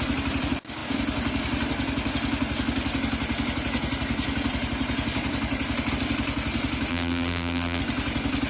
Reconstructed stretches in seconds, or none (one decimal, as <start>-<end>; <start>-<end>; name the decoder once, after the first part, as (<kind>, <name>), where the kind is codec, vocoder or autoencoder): 6.9-7.8 (vocoder, BigVGAN v2)

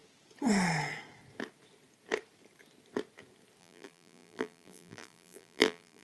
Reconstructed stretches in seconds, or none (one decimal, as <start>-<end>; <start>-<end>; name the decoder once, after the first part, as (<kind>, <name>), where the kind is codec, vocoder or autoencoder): 3.6-6.0 (vocoder, BigVGAN v2)

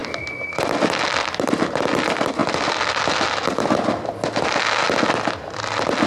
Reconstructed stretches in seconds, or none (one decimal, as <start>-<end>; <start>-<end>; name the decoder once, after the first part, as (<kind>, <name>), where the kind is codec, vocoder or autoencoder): none

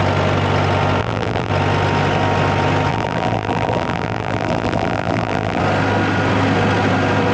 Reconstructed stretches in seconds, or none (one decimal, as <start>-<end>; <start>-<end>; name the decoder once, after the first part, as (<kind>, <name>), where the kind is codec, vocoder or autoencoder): 1.0-1.5 (vocoder, BigVGAN v2); 2.9-5.6

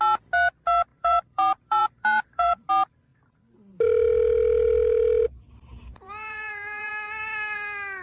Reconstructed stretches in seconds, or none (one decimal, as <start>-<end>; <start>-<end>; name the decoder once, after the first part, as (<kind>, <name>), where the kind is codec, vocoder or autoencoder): 0.9-2.7 (vocoder, BigVGAN v2); 5.7-6.9

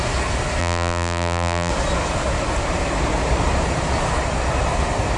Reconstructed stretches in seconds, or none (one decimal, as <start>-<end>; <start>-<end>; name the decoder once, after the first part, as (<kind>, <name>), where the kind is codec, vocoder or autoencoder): 0.6-1.7 (vocoder, BigVGAN v2)